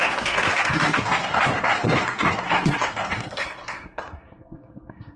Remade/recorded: remade